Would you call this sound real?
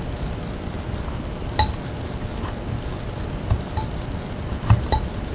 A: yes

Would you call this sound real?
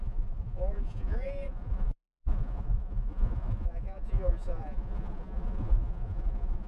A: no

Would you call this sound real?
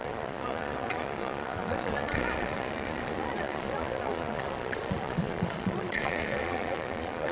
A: no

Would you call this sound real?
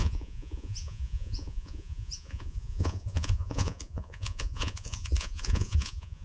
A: no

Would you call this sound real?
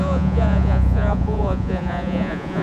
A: no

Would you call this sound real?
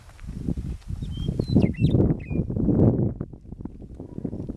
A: yes